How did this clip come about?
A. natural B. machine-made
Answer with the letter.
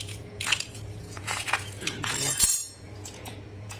B